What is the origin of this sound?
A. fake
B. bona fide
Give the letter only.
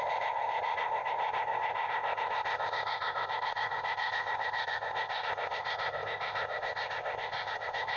A